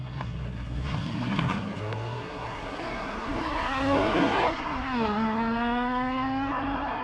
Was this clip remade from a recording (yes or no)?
yes